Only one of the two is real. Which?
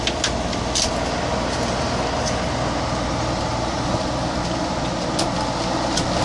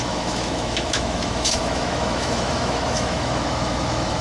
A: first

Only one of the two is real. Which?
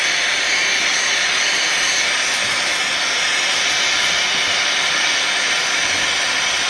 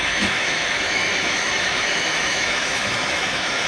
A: first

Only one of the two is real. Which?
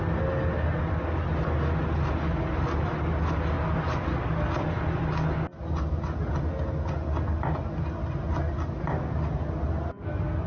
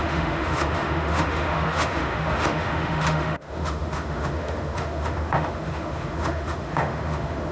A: first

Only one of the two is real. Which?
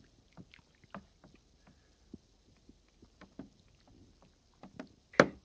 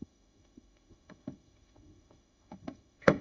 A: first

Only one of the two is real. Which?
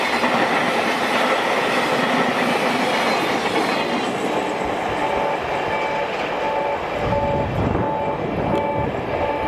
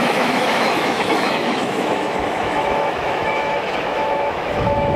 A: first